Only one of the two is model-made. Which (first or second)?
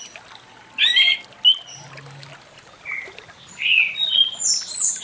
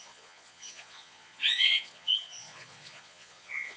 second